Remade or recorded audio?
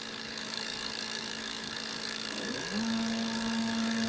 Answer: remade